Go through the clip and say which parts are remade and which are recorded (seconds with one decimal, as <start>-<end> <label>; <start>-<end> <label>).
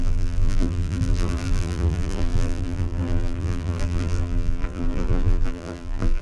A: 0.0-6.2 remade